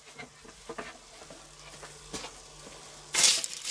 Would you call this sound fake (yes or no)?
no